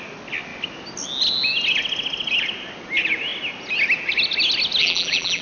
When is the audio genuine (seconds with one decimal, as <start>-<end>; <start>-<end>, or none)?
0.0-4.8